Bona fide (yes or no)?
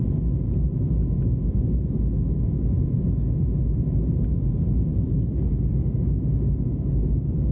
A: yes